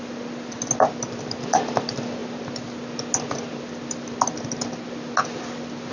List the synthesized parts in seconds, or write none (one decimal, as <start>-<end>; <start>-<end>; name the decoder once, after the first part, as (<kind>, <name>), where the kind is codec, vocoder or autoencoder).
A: none